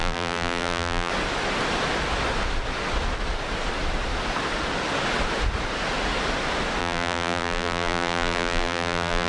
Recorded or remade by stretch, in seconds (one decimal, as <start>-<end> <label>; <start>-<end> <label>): 0.0-1.1 remade; 1.1-6.8 recorded; 6.8-9.3 remade